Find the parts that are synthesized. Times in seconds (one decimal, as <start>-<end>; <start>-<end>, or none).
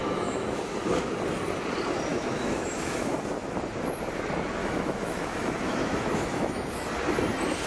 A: 0.0-0.6; 2.1-3.2; 4.6-6.9